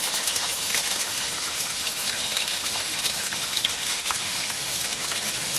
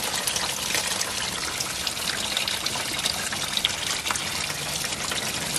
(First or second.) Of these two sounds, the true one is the second